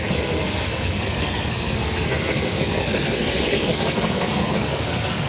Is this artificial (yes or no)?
yes